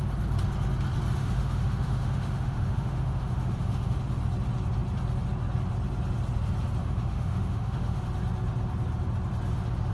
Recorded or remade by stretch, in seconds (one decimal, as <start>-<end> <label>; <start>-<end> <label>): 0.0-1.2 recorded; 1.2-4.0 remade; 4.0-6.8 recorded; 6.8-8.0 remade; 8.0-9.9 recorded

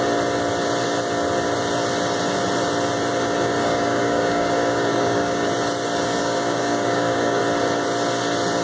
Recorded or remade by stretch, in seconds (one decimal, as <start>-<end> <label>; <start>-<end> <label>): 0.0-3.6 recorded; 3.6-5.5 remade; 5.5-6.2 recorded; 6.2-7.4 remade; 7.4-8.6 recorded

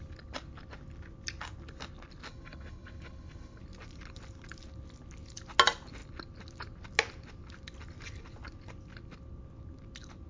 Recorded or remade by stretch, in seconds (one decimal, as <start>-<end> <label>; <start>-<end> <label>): 0.0-2.3 recorded; 2.3-3.6 remade; 3.6-10.3 recorded